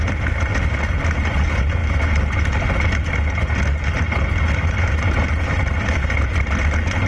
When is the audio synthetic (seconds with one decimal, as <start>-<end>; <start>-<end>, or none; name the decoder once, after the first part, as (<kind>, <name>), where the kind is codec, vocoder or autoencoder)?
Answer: none